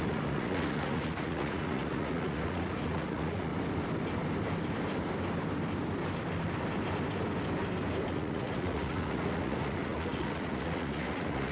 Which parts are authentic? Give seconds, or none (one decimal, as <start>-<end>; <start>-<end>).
3.5-8.1